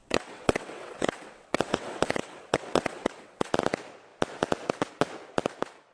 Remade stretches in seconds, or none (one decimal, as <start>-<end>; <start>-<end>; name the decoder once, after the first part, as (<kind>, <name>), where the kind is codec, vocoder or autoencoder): 0.0-3.5 (vocoder, WaveNeXt)